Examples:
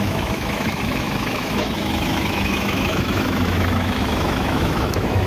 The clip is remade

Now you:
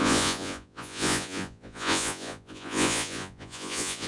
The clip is remade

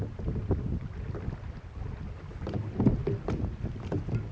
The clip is recorded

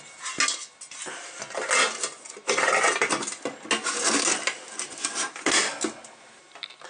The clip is recorded